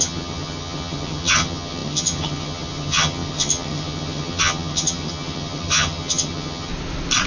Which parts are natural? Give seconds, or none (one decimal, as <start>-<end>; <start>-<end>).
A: 6.7-7.3